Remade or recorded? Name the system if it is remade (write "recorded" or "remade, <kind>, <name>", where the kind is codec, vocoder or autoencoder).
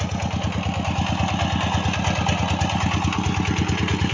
recorded